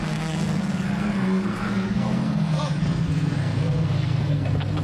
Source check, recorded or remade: remade